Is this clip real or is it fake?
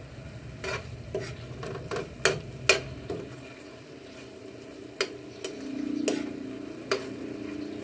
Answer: real